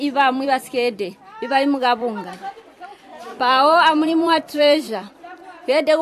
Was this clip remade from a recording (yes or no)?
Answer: yes